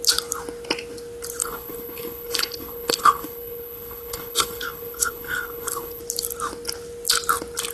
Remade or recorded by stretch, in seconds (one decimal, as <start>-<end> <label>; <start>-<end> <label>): 0.0-1.4 recorded; 1.4-6.0 remade; 6.0-7.7 recorded